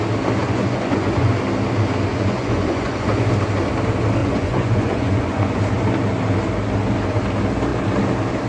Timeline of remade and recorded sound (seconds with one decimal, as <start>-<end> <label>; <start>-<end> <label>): 0.0-0.4 recorded; 0.4-1.3 remade; 1.3-2.1 recorded; 2.1-3.2 remade; 3.2-4.2 recorded; 4.2-5.6 remade; 5.6-8.5 recorded